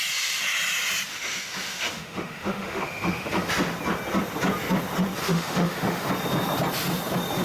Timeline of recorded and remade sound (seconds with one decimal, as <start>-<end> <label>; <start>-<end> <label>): 0.0-1.1 recorded; 1.1-3.5 remade; 3.5-5.2 recorded; 5.2-6.1 remade; 6.1-7.4 recorded